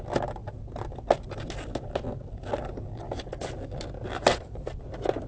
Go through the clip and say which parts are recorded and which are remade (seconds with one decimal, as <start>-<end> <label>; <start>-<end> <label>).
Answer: 0.0-4.3 recorded; 4.3-4.8 remade; 4.8-5.3 recorded